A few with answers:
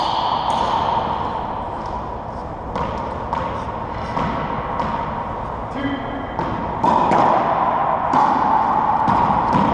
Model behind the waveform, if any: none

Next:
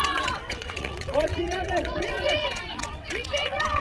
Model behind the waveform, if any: vocoder, WaveNeXt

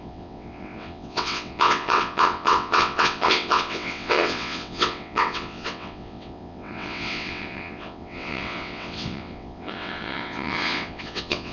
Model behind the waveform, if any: vocoder, WaveNeXt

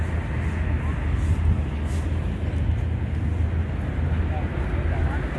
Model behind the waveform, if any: none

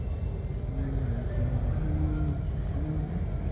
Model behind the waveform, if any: none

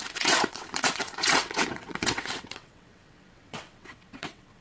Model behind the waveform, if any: vocoder, WaveNeXt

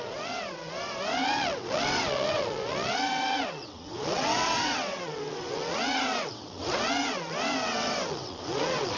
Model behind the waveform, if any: vocoder, WaveNeXt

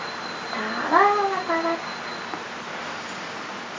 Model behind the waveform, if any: none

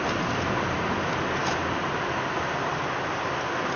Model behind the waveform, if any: none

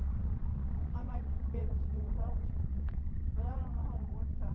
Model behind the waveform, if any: vocoder, WaveNeXt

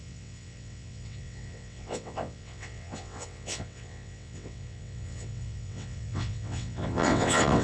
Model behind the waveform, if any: vocoder, WaveNeXt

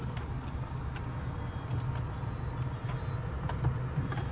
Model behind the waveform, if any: none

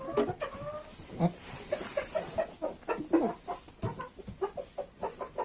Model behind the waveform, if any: none